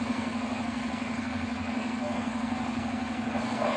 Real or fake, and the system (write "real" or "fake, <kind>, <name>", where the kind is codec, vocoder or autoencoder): fake, codec, SNAC